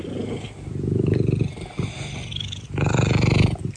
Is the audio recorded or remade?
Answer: recorded